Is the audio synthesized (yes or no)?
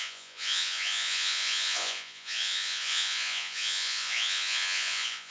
yes